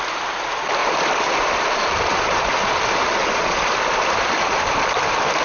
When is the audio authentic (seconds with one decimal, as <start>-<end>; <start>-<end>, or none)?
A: 0.0-2.1; 2.8-3.2; 3.7-5.4